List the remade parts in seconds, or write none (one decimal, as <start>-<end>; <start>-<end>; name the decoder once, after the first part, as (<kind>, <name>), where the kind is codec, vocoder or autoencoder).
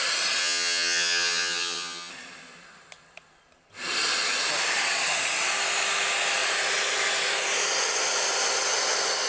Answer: 0.4-2.1 (vocoder, HiFi-GAN)